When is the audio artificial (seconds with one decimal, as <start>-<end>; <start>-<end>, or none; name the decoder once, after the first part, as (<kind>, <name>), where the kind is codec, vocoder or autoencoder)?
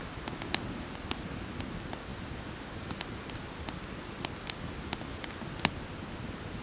none